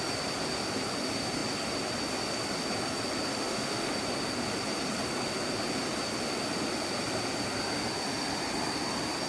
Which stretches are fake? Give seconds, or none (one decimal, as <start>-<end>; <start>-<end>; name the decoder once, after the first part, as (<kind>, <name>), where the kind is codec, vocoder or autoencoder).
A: 3.3-3.9 (autoencoder, DAC-VAE)